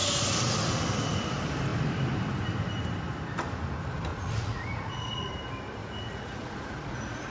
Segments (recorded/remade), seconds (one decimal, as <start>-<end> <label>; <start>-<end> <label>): 0.0-4.1 recorded; 4.1-5.3 remade; 5.3-5.8 recorded; 5.8-7.3 remade